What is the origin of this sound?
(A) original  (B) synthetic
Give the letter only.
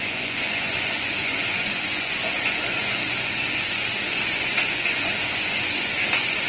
B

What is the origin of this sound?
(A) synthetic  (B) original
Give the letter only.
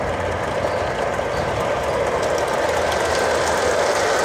B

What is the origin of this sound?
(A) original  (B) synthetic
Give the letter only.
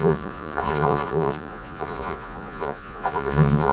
B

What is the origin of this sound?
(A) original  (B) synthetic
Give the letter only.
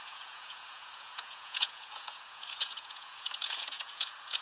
B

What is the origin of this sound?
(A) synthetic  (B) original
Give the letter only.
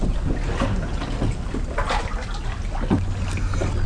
B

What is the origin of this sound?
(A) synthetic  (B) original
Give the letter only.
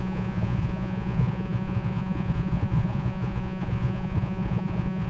A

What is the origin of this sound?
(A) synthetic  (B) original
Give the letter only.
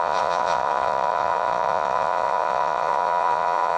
A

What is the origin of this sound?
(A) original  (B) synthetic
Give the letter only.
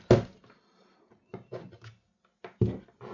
A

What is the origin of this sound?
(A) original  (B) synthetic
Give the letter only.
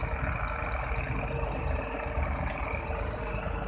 A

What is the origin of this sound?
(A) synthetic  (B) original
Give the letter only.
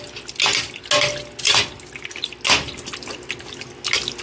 B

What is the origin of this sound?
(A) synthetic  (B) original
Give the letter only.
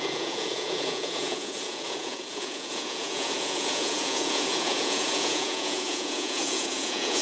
A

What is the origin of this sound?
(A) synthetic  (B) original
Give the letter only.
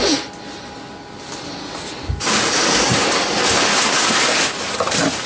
B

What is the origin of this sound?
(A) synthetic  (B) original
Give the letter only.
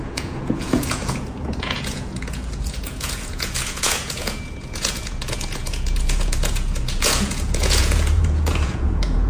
A